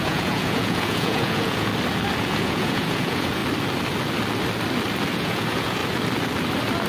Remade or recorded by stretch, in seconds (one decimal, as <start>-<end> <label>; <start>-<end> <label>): 0.0-1.7 remade; 1.7-2.2 recorded; 2.2-3.4 remade; 3.4-5.1 recorded; 5.1-5.8 remade; 5.8-6.9 recorded